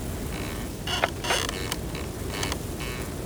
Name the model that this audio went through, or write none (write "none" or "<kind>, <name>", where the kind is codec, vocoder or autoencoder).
none